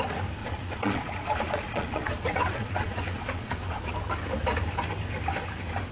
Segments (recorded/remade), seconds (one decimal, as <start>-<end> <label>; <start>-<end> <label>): 0.0-0.4 recorded; 0.4-3.9 remade; 3.9-5.9 recorded